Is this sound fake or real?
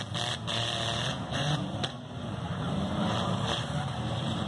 fake